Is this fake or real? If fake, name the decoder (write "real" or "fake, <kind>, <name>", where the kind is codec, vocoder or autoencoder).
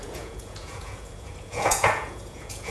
fake, vocoder, Vocos